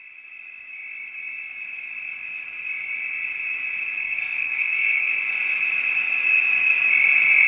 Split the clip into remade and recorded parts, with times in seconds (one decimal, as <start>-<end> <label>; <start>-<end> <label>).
0.0-4.0 recorded; 4.0-5.1 remade; 5.1-7.5 recorded